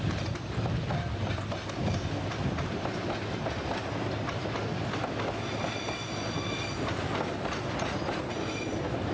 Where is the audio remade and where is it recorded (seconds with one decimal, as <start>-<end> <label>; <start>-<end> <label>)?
0.0-9.1 recorded